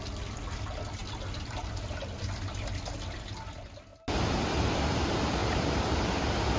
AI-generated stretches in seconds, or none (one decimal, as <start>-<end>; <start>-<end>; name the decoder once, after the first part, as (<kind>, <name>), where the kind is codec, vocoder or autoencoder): 5.4-6.6 (vocoder, BigVGAN v2)